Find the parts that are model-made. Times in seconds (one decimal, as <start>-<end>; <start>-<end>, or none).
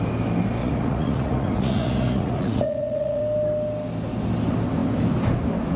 0.6-3.2